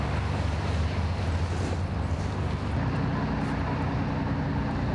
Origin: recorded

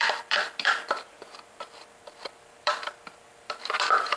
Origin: remade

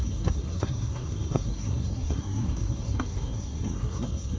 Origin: remade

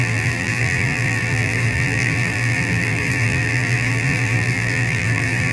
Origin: remade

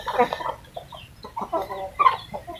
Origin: recorded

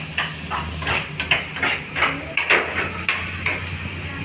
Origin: recorded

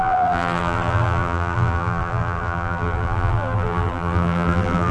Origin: remade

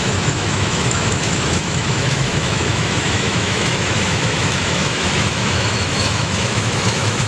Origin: remade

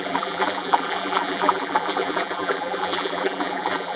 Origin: remade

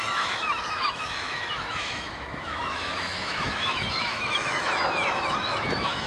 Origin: remade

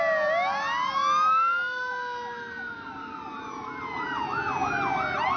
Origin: recorded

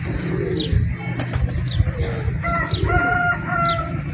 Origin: recorded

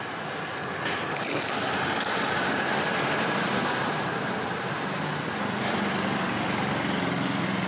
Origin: recorded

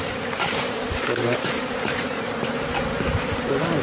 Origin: remade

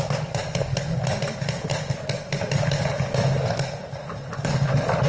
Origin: recorded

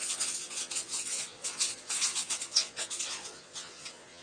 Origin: remade